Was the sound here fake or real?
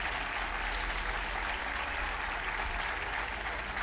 real